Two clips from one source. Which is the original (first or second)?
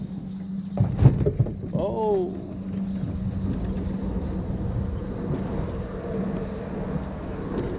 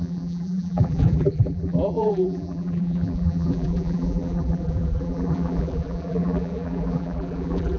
first